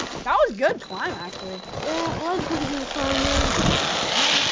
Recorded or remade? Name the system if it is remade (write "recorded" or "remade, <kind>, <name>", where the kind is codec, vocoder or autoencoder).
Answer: recorded